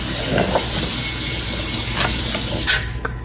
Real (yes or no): yes